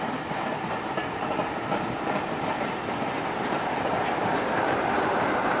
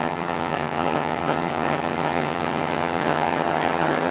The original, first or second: first